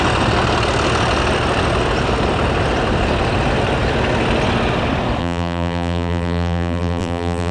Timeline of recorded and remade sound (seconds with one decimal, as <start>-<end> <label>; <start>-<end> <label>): 0.0-5.2 recorded; 5.2-7.5 remade